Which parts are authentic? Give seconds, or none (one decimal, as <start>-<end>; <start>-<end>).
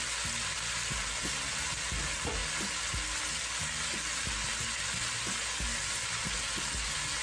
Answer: 0.0-7.2